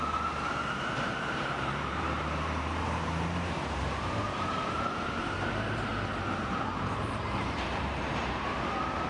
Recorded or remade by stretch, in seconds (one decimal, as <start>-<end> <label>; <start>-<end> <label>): 0.0-5.9 remade; 5.9-7.0 recorded; 7.0-9.1 remade